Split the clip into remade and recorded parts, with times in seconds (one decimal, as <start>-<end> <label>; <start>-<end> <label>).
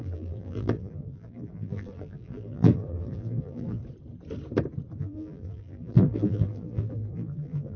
0.0-3.8 remade; 3.8-5.0 recorded; 5.0-7.8 remade